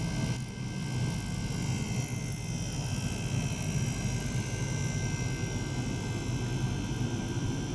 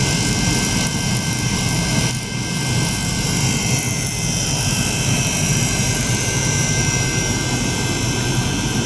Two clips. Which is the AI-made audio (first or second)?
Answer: second